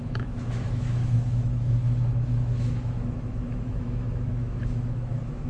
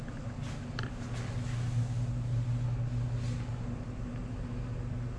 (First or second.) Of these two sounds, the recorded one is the second